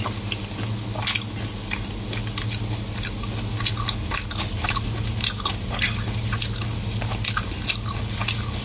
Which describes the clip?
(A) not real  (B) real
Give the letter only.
B